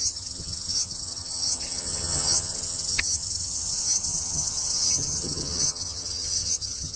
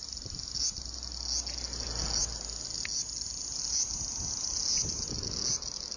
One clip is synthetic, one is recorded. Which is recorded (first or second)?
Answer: second